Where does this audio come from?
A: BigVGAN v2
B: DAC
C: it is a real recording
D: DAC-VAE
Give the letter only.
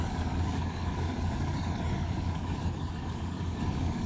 B